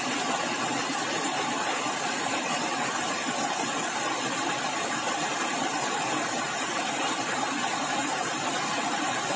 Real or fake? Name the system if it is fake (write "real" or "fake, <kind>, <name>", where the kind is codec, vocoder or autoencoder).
real